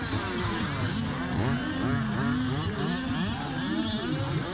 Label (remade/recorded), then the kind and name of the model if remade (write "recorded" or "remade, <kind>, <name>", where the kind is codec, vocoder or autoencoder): recorded